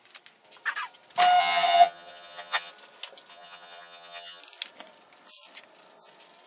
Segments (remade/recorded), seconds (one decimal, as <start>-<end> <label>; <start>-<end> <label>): 0.0-1.4 recorded; 1.4-2.7 remade; 2.7-3.3 recorded; 3.3-4.4 remade; 4.4-6.5 recorded